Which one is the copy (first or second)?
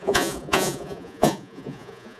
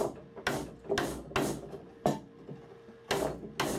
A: first